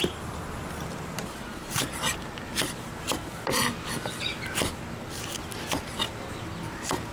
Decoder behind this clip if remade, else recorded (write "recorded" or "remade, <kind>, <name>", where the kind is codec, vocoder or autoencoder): recorded